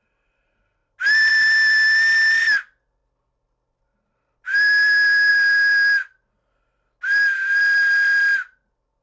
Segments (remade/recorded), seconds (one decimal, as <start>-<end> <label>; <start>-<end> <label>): 0.0-9.0 recorded

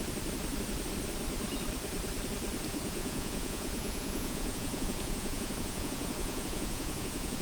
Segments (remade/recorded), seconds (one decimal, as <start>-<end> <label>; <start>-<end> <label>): 0.0-2.7 recorded; 2.7-7.4 remade